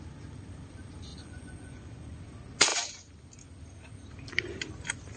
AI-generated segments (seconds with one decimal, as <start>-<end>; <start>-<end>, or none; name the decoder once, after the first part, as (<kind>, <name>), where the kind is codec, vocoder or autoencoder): 1.1-2.2 (vocoder, Vocos)